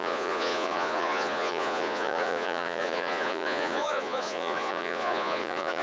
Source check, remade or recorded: remade